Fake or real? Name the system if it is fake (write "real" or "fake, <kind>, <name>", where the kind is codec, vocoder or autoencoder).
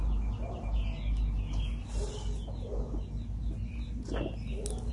real